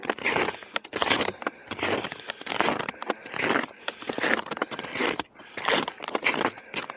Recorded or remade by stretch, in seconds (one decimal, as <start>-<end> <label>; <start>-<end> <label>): 0.0-1.6 recorded; 1.6-2.3 remade; 2.3-3.2 recorded; 3.2-5.5 remade; 5.5-7.0 recorded

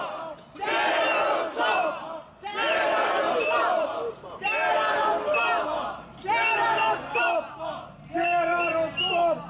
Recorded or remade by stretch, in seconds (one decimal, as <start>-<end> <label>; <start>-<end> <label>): 0.0-2.5 recorded; 2.5-4.4 remade; 4.4-9.5 recorded

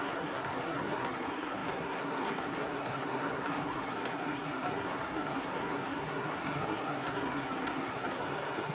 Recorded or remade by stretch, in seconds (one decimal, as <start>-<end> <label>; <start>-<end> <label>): 0.0-8.7 remade

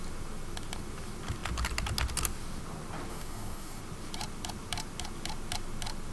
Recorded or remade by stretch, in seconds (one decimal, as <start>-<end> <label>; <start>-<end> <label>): 0.0-3.1 recorded; 3.1-3.8 remade; 3.8-6.1 recorded